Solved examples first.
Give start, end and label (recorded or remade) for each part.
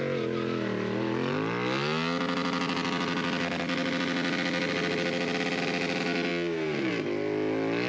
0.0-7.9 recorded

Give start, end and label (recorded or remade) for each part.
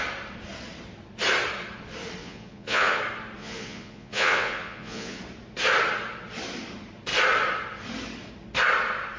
0.0-2.2 recorded; 2.2-3.0 remade; 3.0-3.4 recorded; 3.4-5.2 remade; 5.2-9.2 recorded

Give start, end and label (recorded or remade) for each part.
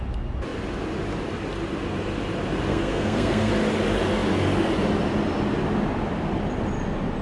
0.0-2.7 recorded; 2.7-3.5 remade; 3.5-7.2 recorded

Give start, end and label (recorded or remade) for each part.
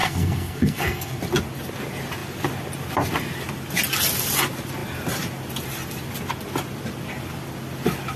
0.0-1.2 remade; 1.2-8.2 recorded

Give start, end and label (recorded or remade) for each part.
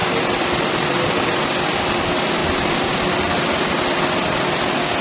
0.0-0.7 remade; 0.7-2.4 recorded; 2.4-4.4 remade; 4.4-5.0 recorded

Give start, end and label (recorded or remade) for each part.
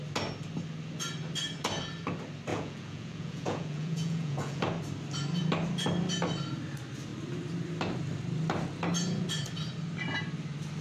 0.0-2.5 recorded; 2.5-4.6 remade; 4.6-10.8 recorded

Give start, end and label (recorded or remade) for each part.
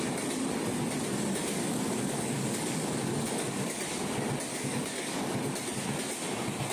0.0-1.5 recorded; 1.5-3.8 remade; 3.8-4.5 recorded; 4.5-5.4 remade; 5.4-6.7 recorded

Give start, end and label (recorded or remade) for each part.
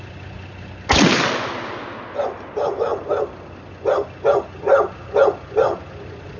0.0-6.4 recorded